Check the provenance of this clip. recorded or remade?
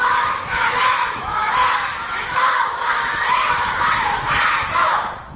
remade